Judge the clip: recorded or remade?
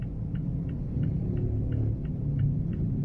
remade